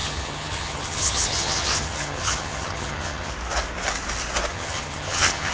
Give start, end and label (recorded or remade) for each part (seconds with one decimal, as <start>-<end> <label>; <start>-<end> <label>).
0.0-3.3 remade; 3.3-4.5 recorded; 4.5-5.5 remade